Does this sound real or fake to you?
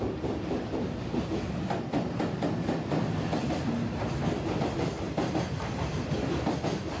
real